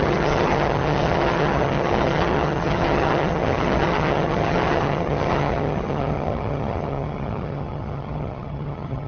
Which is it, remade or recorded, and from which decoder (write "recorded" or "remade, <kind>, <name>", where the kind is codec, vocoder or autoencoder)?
remade, vocoder, HiFi-GAN